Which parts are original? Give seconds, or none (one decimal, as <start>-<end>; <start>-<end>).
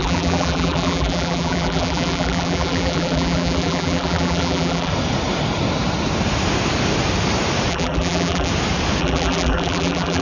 4.9-7.7; 8.5-9.0